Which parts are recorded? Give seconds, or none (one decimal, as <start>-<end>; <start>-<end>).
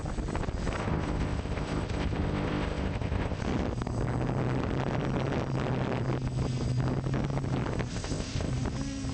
0.0-0.8; 3.4-7.9; 8.5-9.1